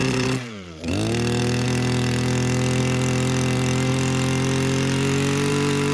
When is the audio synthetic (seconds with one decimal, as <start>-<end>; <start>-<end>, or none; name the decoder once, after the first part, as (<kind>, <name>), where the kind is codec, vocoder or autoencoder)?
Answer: 0.0-0.9 (vocoder, Vocos)